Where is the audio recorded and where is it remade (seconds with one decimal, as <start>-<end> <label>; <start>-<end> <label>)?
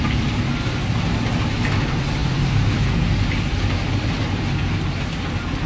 0.0-2.2 recorded; 2.2-4.2 remade; 4.2-5.7 recorded